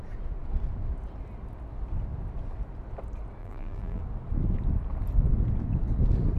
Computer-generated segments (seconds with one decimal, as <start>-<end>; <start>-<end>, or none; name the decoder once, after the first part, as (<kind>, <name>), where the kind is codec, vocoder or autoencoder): 3.4-4.0 (vocoder, BigVGAN v2)